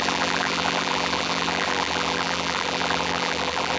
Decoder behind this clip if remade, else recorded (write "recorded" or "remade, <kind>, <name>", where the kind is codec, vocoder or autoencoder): remade, vocoder, BigVGAN v2